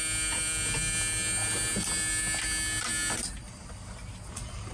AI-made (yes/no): no